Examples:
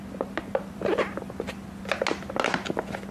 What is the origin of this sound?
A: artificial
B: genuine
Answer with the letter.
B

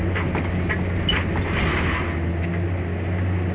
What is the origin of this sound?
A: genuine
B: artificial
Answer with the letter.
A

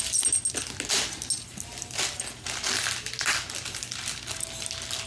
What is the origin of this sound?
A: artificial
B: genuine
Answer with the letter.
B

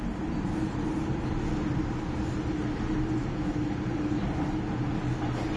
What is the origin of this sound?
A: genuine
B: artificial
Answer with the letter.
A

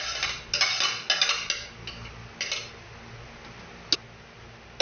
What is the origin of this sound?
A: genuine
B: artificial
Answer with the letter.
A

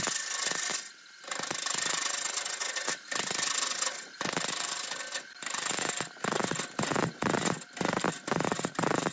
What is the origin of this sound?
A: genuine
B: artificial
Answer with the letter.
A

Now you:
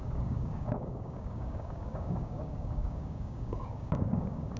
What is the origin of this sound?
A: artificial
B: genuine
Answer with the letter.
A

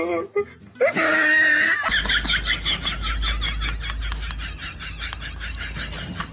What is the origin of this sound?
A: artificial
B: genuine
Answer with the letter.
B